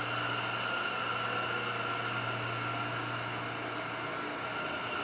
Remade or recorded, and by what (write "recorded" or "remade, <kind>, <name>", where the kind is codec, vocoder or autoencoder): recorded